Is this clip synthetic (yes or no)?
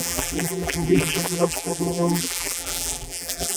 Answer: yes